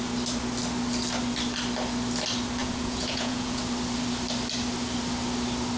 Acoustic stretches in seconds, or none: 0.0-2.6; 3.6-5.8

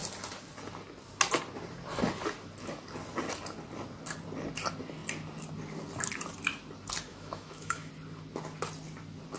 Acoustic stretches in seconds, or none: 0.0-7.1; 7.9-9.4